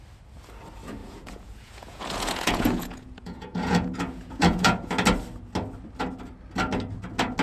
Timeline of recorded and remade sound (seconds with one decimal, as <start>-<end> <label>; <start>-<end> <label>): 0.0-1.0 recorded; 1.0-4.9 remade; 4.9-7.4 recorded